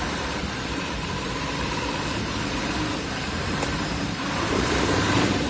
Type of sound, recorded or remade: remade